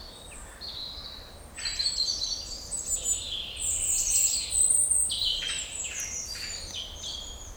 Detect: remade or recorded recorded